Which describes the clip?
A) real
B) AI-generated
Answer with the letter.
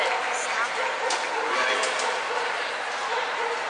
A